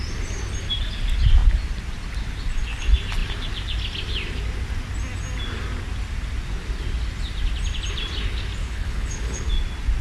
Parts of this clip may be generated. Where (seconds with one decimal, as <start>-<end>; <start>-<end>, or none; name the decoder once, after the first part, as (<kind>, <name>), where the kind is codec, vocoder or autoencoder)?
8.6-9.5 (codec, HILCodec)